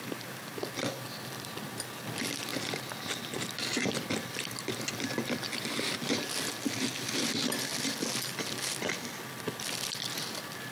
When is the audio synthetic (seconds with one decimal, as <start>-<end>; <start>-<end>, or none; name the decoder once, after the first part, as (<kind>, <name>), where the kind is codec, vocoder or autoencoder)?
none